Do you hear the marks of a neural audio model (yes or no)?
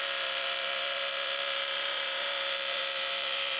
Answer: yes